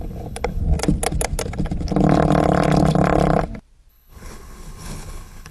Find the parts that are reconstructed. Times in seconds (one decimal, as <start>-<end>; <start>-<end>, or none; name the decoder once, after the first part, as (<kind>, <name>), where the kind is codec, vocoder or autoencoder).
0.0-0.6 (codec, HILCodec); 3.9-5.5